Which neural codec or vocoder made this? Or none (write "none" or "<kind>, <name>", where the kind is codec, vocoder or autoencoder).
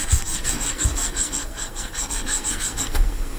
codec, SNAC